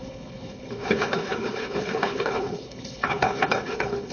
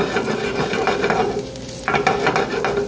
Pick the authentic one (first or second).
second